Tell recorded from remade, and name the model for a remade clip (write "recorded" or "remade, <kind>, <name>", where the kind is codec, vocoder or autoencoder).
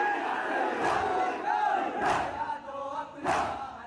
recorded